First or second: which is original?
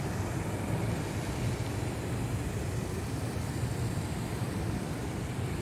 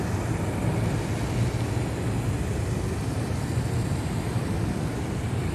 second